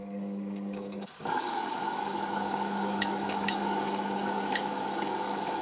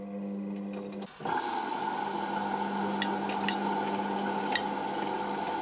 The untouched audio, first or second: second